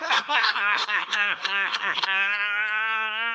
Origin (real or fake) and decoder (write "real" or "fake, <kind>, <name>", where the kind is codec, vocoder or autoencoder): fake, codec, SNAC